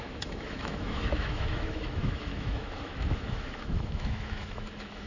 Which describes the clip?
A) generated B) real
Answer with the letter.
A